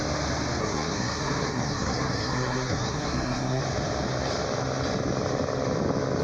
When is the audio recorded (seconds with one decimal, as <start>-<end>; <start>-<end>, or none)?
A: 0.0-0.6; 3.6-6.2